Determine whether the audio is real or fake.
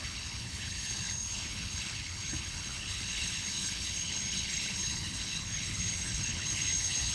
fake